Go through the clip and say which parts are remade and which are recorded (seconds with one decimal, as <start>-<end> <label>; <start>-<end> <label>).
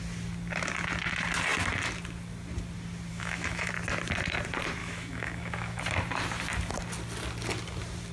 0.0-3.1 recorded; 3.1-3.7 remade; 3.7-4.8 recorded; 4.8-5.8 remade; 5.8-8.1 recorded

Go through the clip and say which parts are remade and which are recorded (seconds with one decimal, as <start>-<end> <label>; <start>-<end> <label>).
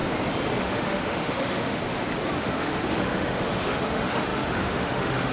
0.0-0.6 recorded; 0.6-1.8 remade; 1.8-2.4 recorded; 2.4-5.3 remade